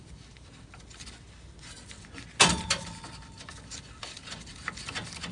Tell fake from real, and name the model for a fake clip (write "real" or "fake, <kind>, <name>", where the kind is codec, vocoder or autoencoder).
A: real